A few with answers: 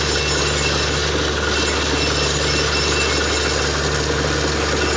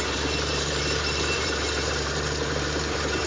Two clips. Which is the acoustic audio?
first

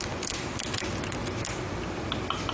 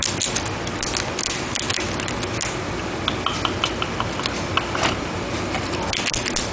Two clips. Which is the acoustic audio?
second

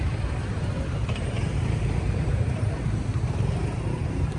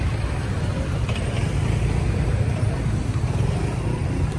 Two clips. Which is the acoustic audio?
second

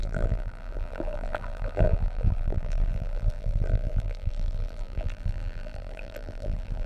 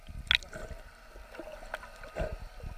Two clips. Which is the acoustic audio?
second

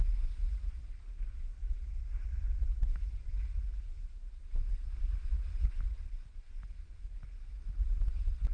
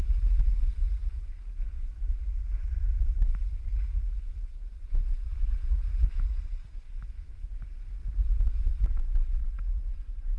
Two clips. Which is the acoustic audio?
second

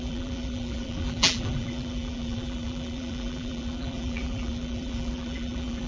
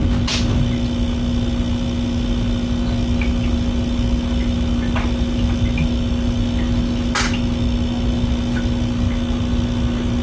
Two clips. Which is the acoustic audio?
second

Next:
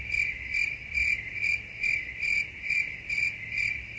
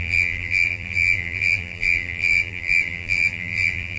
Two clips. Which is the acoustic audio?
first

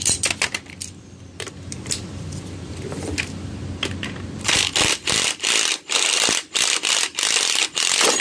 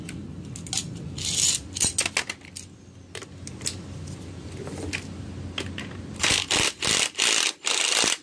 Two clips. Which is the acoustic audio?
second